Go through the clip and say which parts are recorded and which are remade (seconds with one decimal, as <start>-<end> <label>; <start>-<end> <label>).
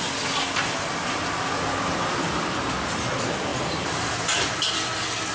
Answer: 0.0-3.5 recorded; 3.5-4.1 remade; 4.1-5.3 recorded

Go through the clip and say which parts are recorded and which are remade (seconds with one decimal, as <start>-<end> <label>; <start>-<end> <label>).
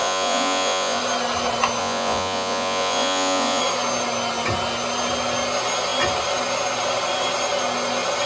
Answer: 0.0-1.0 remade; 1.0-1.8 recorded; 1.8-3.6 remade; 3.6-8.3 recorded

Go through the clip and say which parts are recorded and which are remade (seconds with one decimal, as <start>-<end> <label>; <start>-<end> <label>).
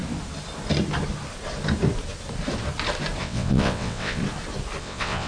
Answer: 0.0-3.2 recorded; 3.2-4.2 remade; 4.2-4.8 recorded; 4.8-5.3 remade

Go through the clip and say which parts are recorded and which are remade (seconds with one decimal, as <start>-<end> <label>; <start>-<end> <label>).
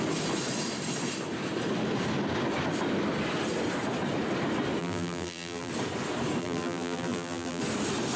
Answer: 0.0-4.8 recorded; 4.8-5.7 remade; 5.7-6.4 recorded; 6.4-7.6 remade; 7.6-8.2 recorded